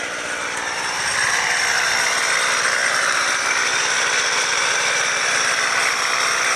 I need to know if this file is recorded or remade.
recorded